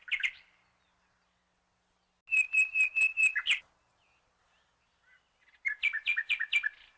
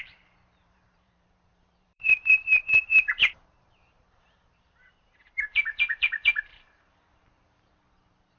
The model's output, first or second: second